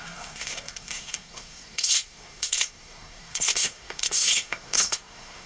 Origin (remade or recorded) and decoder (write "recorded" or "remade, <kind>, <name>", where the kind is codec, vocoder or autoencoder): remade, codec, SNAC